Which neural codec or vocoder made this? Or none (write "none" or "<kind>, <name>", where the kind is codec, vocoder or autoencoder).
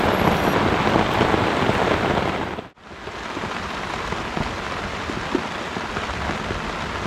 none